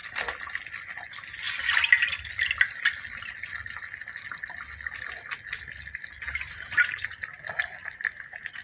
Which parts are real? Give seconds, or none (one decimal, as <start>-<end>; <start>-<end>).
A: 0.0-8.6